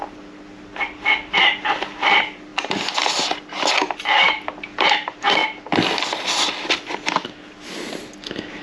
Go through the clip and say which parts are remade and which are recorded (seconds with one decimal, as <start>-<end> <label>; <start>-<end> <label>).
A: 0.0-8.6 recorded